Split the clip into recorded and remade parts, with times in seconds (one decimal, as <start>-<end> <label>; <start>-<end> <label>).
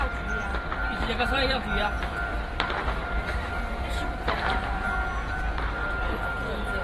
0.0-0.5 recorded; 0.5-4.6 remade; 4.6-6.8 recorded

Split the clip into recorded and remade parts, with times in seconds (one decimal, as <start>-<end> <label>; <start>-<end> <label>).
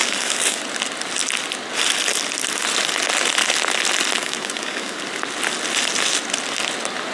0.0-0.6 remade; 0.6-4.2 recorded; 4.2-5.0 remade; 5.0-7.1 recorded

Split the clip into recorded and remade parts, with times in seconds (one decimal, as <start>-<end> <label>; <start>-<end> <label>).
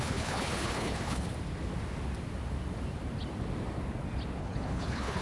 0.0-1.3 remade; 1.3-4.4 recorded; 4.4-5.2 remade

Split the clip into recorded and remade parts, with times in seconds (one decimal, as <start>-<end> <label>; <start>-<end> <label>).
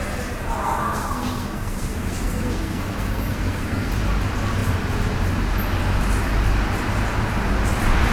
0.0-0.6 recorded; 0.6-3.9 remade; 3.9-8.1 recorded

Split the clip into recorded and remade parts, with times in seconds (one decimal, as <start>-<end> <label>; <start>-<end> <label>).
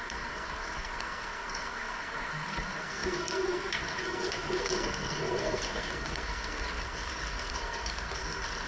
0.0-8.7 remade